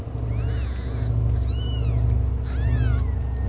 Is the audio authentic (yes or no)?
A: yes